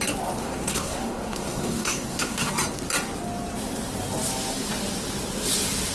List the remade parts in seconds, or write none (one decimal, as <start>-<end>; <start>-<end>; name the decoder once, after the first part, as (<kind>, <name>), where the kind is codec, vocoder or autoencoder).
0.4-2.5 (codec, SNAC)